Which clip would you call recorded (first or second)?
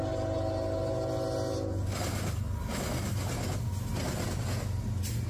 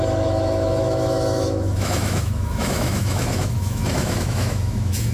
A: first